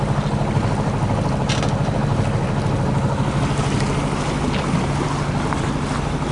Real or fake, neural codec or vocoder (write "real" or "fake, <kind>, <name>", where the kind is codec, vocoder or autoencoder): real